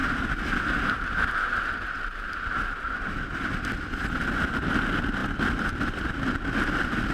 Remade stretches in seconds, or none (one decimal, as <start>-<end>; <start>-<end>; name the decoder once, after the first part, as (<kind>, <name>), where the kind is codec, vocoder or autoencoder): none